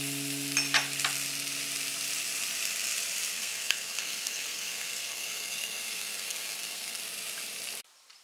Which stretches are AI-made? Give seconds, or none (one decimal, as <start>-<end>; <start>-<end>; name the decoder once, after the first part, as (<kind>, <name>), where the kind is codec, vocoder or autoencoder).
3.3-7.0 (codec, SNAC)